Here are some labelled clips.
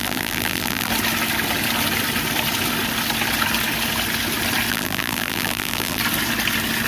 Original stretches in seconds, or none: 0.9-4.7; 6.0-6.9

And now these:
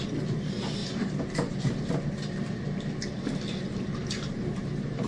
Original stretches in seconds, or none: 0.0-0.8; 2.5-4.0

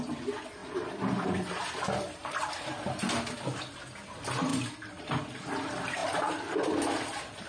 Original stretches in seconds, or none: 0.0-0.6; 1.7-2.2; 2.8-4.5; 5.0-7.5